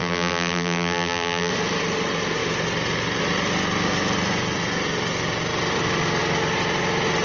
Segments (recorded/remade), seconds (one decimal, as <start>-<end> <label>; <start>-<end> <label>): 0.0-1.5 remade; 1.5-7.2 recorded